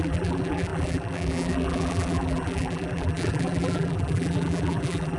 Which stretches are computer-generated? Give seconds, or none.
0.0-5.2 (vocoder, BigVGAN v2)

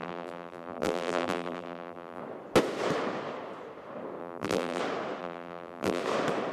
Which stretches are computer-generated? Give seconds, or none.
0.0-2.2 (vocoder, BigVGAN v2); 4.2-4.8; 5.2-6.0

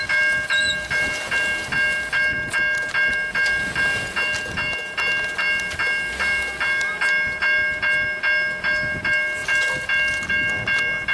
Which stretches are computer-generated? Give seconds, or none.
none

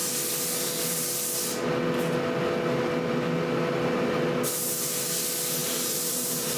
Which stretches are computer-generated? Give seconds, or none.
5.6-6.6 (vocoder, BigVGAN v2)

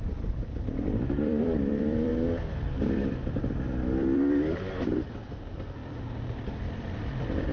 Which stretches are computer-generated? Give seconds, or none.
0.0-2.1 (vocoder, BigVGAN v2); 3.0-7.5

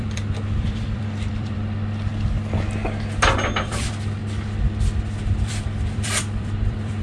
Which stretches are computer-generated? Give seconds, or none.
0.0-2.1 (vocoder, BigVGAN v2); 3.6-4.2; 5.2-7.0